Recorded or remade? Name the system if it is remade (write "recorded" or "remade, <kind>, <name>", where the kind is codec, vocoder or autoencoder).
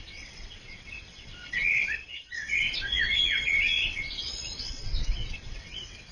remade, vocoder, WaveNeXt